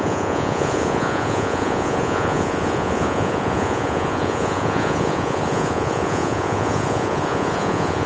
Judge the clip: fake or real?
fake